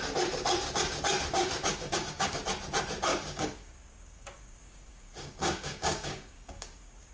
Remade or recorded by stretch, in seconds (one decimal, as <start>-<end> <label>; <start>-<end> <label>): 0.0-1.7 recorded; 1.7-2.4 remade; 2.4-3.1 recorded; 3.1-7.1 remade